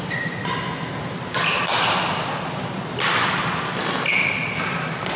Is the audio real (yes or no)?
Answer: yes